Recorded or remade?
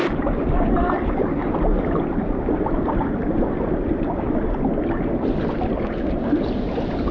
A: recorded